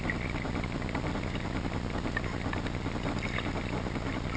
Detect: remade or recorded recorded